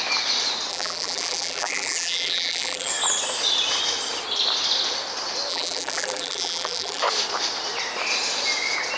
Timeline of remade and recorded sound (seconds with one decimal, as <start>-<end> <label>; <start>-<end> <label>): 0.0-0.7 recorded; 0.7-2.9 remade; 2.9-5.5 recorded; 5.5-7.0 remade; 7.0-9.0 recorded